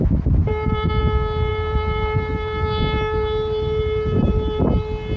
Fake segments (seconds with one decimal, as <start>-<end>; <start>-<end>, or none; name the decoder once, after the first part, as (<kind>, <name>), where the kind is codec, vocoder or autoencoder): 0.4-1.0 (vocoder, BigVGAN v2); 1.5-4.6